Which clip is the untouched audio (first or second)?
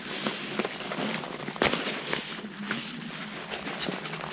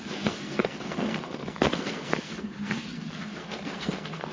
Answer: first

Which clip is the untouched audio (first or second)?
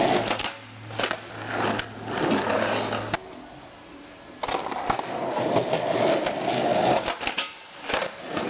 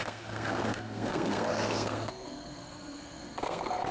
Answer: first